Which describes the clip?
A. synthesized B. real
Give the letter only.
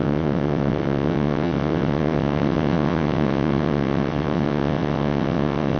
A